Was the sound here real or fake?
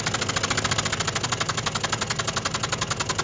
real